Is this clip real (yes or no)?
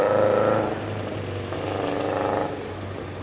yes